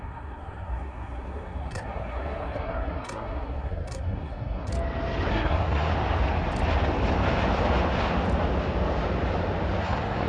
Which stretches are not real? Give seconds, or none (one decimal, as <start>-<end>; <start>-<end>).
0.0-4.7; 5.3-5.9; 9.8-10.3